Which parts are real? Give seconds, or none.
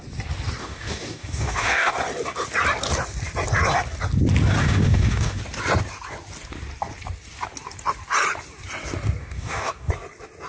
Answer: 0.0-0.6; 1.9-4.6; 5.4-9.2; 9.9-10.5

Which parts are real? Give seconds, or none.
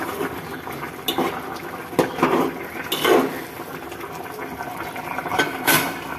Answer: 0.0-5.3